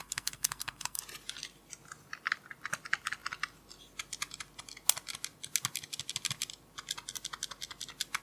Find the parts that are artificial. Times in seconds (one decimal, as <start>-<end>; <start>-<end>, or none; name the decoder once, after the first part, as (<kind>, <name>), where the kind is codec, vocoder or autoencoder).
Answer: 0.0-1.0 (codec, SNAC)